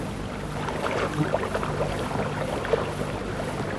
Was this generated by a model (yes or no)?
no